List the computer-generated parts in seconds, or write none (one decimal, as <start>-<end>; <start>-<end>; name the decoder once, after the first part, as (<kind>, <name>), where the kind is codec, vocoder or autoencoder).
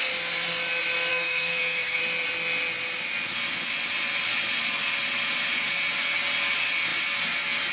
1.1-2.0 (codec, SNAC)